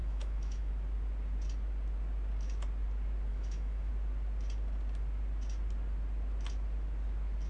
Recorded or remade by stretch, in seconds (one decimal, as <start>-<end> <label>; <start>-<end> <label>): 0.0-0.7 remade; 0.7-3.3 recorded; 3.3-3.9 remade; 3.9-7.5 recorded